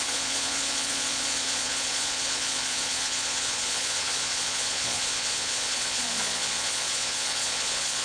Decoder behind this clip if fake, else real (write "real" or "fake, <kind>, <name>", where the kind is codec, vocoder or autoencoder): fake, vocoder, Vocos